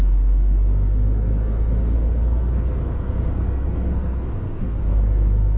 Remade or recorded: remade